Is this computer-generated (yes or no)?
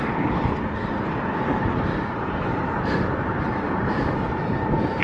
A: yes